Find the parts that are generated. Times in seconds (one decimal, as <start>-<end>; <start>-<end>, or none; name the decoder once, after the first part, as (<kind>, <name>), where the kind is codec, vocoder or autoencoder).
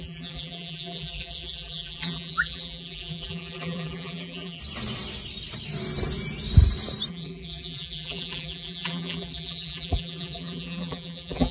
0.0-4.6 (vocoder, BigVGAN v2); 7.1-11.5